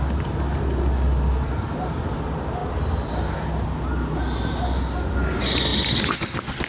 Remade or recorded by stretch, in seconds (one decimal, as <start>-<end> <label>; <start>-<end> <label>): 0.0-6.7 recorded